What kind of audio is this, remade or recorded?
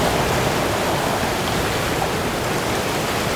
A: recorded